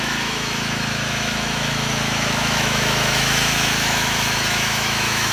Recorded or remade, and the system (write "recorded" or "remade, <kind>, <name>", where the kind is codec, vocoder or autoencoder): remade, autoencoder, DAC-VAE